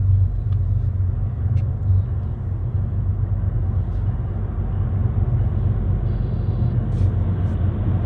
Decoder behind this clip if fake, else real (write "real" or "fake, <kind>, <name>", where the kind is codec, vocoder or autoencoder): real